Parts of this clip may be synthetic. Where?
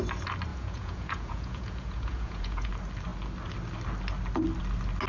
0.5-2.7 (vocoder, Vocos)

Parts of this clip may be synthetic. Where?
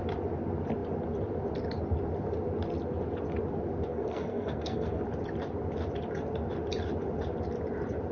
3.9-5.0 (codec, SNAC)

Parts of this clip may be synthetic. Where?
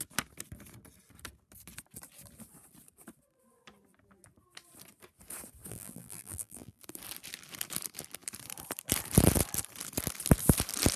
5.7-6.8 (vocoder, BigVGAN v2)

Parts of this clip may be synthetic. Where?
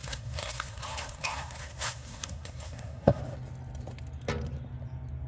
0.0-3.2 (codec, SNAC)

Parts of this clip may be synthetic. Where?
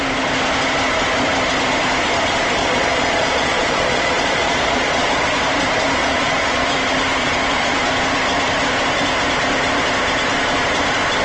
2.6-5.1 (vocoder, Vocos); 6.0-6.7; 7.2-7.9